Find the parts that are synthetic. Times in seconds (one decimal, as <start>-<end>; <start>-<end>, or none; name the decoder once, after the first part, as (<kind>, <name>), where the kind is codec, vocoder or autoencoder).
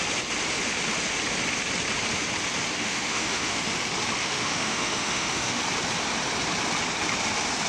2.8-3.6 (autoencoder, DAC-VAE); 4.2-5.6